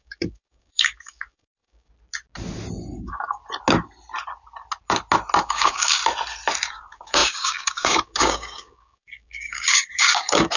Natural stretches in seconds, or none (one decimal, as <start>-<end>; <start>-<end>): 1.9-3.0; 3.4-5.4; 6.0-6.7